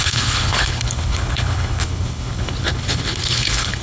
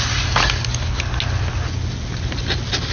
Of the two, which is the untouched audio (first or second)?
second